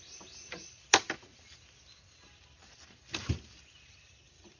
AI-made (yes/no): yes